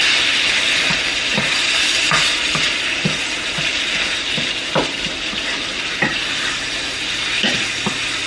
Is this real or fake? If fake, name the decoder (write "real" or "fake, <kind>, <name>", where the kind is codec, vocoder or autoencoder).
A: real